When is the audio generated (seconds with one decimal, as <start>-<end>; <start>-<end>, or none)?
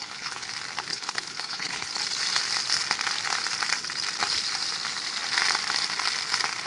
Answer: 0.0-0.5; 0.9-1.9